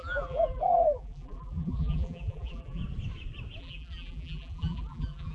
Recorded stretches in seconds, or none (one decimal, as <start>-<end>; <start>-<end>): 2.8-3.6